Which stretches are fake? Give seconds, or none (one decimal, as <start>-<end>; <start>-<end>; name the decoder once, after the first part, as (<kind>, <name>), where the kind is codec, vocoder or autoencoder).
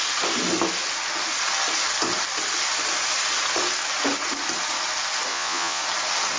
5.3-5.8 (vocoder, Vocos)